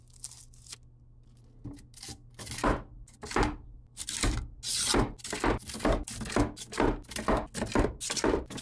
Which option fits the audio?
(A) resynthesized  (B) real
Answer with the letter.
B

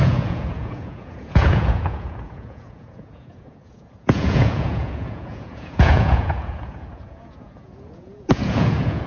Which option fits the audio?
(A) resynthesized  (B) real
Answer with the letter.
A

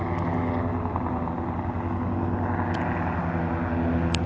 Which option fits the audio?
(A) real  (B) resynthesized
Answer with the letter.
A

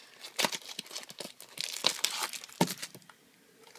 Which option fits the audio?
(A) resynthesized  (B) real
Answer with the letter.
B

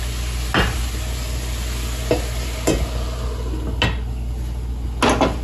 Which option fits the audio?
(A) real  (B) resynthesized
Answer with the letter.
A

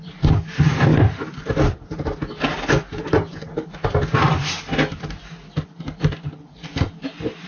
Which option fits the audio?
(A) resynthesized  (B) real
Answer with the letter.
B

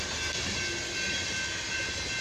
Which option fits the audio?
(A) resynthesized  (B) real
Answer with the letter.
B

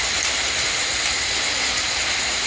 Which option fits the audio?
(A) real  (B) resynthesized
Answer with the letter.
A